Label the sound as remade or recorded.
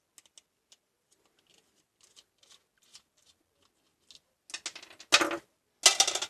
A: recorded